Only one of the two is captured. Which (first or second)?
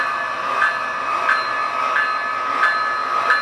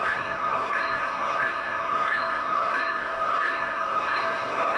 first